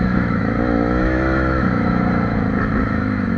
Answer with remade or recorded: remade